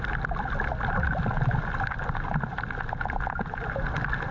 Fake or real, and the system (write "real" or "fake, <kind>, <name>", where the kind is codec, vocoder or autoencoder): real